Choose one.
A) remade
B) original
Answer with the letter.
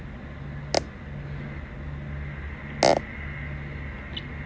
B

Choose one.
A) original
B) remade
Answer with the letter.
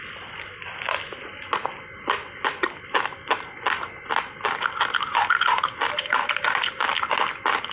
A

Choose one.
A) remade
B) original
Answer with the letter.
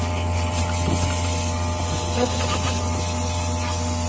B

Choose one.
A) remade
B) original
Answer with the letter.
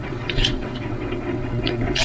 A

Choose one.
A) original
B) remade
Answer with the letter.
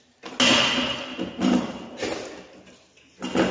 A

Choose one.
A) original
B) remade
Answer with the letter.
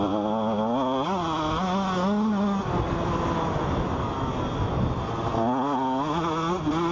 A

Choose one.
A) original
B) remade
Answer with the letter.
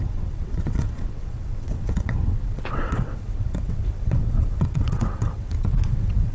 B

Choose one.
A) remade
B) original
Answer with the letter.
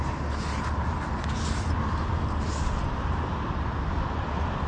B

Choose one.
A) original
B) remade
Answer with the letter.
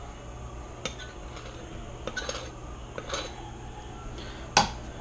A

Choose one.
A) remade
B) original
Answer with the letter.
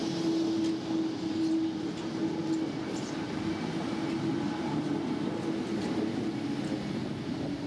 B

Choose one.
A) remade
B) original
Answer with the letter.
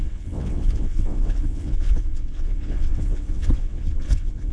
A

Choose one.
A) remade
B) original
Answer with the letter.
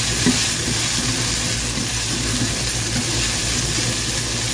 B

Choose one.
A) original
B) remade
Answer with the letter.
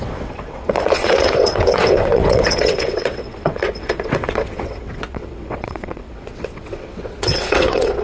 B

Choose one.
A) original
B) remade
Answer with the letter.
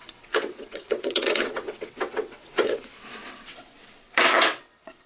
B